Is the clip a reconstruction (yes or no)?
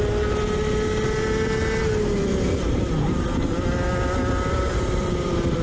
no